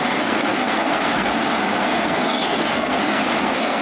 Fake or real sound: fake